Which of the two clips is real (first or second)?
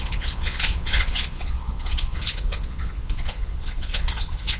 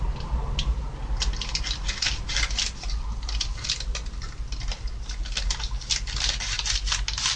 second